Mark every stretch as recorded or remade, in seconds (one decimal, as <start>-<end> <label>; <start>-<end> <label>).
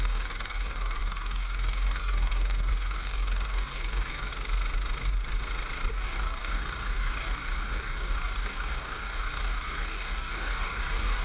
0.0-4.3 remade; 4.3-5.9 recorded; 5.9-11.2 remade